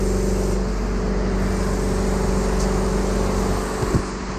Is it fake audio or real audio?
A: real